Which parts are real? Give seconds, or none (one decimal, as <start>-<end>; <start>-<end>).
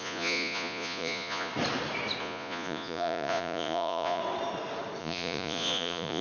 1.5-2.2; 4.2-5.0